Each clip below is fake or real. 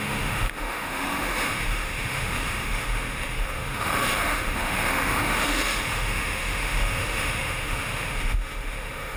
fake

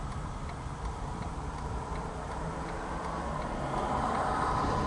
real